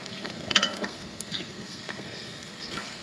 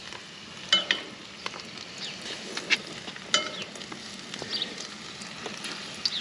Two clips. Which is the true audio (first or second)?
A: second